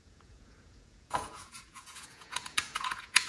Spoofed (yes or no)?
yes